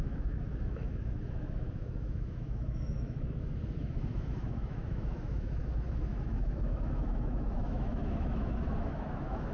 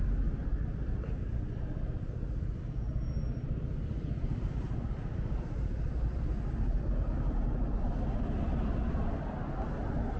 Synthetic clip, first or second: first